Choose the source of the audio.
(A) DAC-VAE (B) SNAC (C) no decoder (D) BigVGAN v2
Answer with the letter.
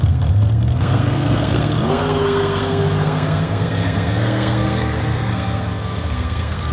B